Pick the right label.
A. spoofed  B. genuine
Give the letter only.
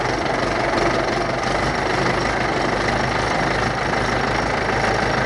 B